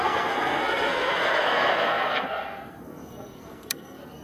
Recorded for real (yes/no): no